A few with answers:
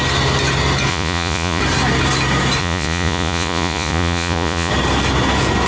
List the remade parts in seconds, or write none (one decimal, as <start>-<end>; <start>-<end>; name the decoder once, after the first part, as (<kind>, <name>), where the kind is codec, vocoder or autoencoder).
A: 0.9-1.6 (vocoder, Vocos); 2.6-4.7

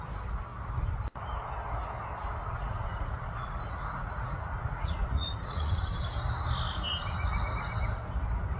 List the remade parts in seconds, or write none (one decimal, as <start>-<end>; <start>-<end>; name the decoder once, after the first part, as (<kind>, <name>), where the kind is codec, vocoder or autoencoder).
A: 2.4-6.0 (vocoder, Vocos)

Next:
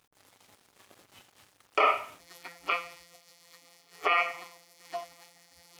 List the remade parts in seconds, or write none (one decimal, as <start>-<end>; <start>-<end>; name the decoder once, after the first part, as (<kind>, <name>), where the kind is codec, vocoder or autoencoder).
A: 2.2-5.8 (vocoder, BigVGAN v2)